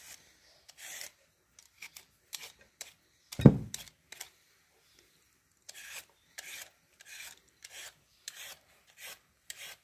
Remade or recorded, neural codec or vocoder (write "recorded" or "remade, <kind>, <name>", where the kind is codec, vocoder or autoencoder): remade, vocoder, BigVGAN v2